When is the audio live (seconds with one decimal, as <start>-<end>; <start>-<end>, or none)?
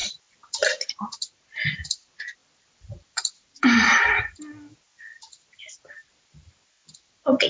0.7-2.4; 6.9-7.5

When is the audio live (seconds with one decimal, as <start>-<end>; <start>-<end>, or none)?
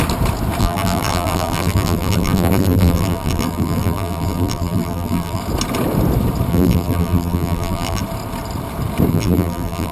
0.0-0.6; 5.4-6.5; 8.0-9.1